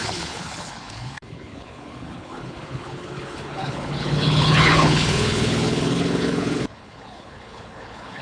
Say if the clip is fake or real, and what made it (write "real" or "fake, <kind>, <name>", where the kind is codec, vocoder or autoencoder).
fake, codec, HILCodec